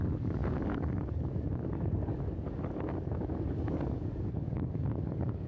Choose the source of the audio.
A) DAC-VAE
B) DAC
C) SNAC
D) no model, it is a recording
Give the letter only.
B